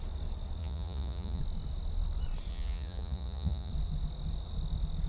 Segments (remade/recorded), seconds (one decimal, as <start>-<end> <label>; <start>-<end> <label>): 0.0-0.6 recorded; 0.6-1.4 remade; 1.4-2.5 recorded; 2.5-3.7 remade; 3.7-5.1 recorded